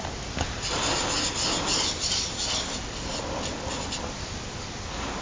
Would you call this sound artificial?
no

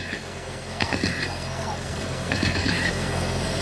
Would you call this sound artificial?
yes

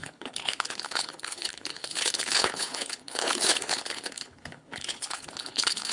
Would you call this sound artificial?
yes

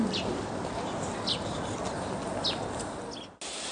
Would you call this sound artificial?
no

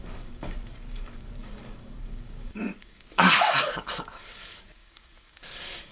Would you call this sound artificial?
yes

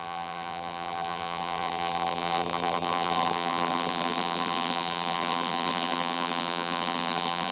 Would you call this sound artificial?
yes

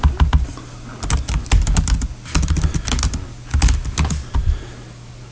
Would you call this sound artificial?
no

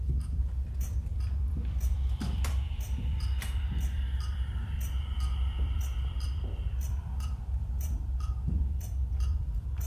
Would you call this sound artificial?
yes